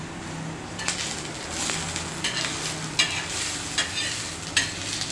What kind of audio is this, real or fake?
real